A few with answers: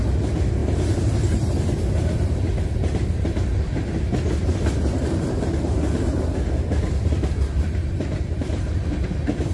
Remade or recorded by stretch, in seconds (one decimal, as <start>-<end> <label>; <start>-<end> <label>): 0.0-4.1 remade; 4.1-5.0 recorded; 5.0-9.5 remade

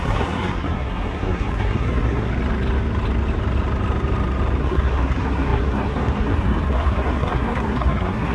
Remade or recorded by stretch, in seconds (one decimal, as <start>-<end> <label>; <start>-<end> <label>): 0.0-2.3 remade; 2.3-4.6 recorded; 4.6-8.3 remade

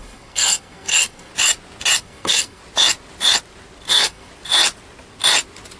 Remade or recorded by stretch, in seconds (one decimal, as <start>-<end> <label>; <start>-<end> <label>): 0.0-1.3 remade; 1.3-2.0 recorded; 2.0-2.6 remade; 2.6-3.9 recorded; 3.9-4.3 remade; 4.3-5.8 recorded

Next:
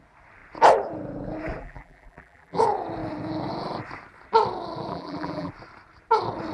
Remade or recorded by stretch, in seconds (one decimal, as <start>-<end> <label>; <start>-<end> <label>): 0.0-1.6 recorded; 1.6-2.6 remade; 2.6-4.9 recorded; 4.9-5.5 remade; 5.5-6.5 recorded